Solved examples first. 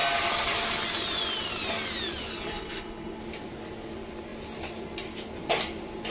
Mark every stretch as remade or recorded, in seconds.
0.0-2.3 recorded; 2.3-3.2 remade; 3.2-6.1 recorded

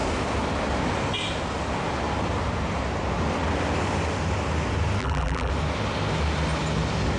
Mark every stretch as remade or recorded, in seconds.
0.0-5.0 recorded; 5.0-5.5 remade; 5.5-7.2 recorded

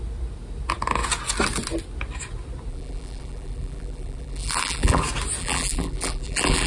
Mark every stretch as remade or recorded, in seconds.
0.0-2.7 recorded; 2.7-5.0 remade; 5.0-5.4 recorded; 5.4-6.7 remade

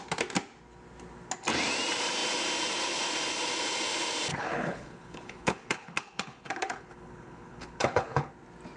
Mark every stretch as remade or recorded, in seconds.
0.0-4.3 recorded; 4.3-8.3 remade; 8.3-8.8 recorded

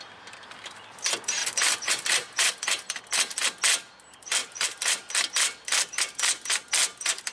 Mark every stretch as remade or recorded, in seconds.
0.0-1.4 recorded; 1.4-2.5 remade; 2.5-4.4 recorded; 4.4-5.1 remade; 5.1-7.3 recorded

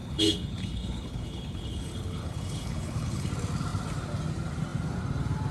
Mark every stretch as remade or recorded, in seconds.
0.0-3.3 remade; 3.3-5.5 recorded

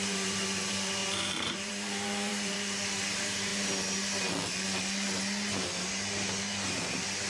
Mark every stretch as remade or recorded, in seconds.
0.0-3.5 remade; 3.5-7.3 recorded

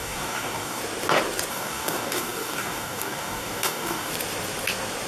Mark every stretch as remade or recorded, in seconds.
0.0-0.8 remade; 0.8-1.5 recorded; 1.5-4.1 remade; 4.1-5.1 recorded